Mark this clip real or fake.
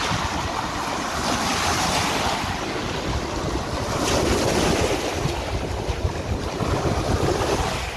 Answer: real